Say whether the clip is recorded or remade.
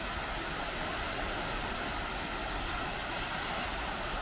recorded